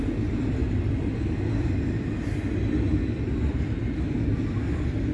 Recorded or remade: recorded